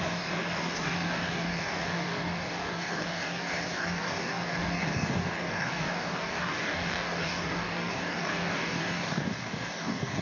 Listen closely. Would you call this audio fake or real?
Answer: fake